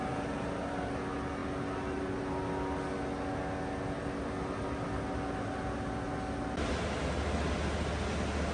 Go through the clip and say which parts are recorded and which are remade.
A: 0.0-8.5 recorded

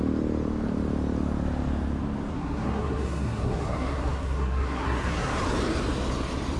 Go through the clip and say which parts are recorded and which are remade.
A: 0.0-2.3 recorded; 2.3-5.3 remade; 5.3-6.6 recorded

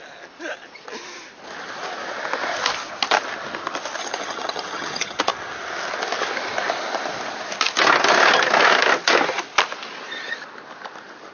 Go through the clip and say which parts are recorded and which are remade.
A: 0.0-4.0 recorded; 4.0-5.2 remade; 5.2-11.3 recorded

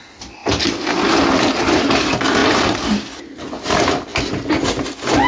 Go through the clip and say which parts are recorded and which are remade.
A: 0.0-5.3 recorded

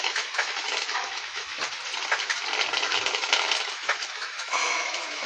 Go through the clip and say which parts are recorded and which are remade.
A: 0.0-1.6 remade; 1.6-2.8 recorded; 2.8-5.3 remade